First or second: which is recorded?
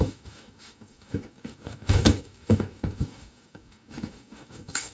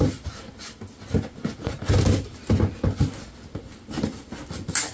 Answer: second